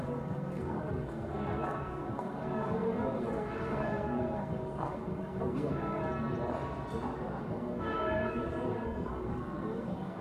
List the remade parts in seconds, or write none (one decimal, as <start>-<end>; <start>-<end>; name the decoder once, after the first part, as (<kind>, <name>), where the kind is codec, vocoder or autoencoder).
0.0-6.0 (codec, SNAC); 7.4-10.2